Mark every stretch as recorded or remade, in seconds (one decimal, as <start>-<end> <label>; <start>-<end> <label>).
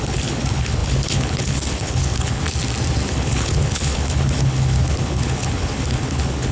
0.0-2.4 remade; 2.4-3.1 recorded; 3.1-6.5 remade